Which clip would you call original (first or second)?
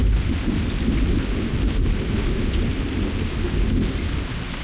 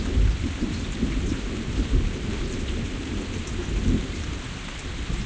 first